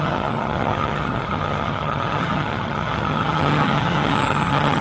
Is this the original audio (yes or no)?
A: no